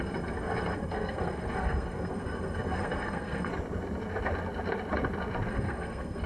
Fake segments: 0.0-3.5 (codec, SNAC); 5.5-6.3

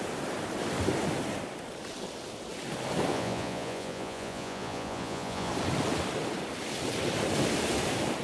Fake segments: 3.1-5.5 (vocoder, Vocos)

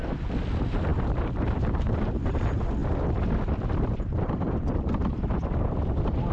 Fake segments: 0.0-6.3 (vocoder, BigVGAN v2)

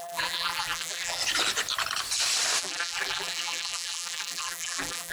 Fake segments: 0.0-1.2 (vocoder, BigVGAN v2); 2.6-5.1

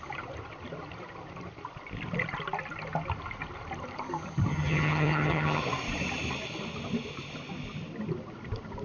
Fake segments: 4.5-5.6 (vocoder, HiFi-GAN)